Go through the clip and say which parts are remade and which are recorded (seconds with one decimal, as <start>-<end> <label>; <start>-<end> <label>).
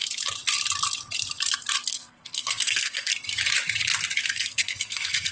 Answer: 0.0-1.9 recorded; 1.9-3.1 remade; 3.1-4.3 recorded; 4.3-5.3 remade